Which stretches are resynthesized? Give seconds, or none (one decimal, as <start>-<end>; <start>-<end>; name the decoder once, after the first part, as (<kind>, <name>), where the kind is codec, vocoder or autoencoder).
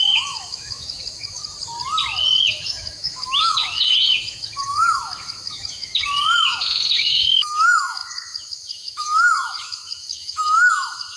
0.0-1.4 (autoencoder, DAC-VAE); 2.5-11.2